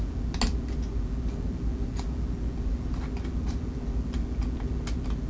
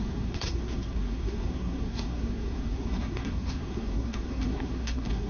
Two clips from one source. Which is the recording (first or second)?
first